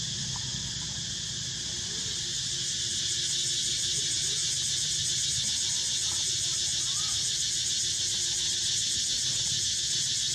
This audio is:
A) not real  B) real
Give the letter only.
B